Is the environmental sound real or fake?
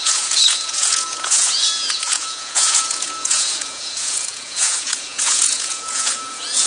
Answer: fake